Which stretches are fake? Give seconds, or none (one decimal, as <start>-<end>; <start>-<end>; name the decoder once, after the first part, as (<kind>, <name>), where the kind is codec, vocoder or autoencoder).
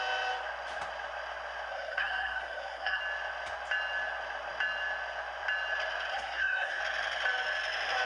1.7-3.0 (codec, SNAC); 6.1-6.8